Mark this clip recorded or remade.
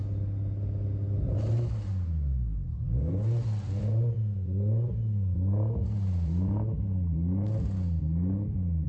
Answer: recorded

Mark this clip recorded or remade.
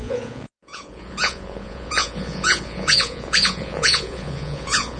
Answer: remade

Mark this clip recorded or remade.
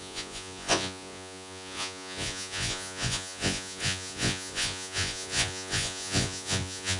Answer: remade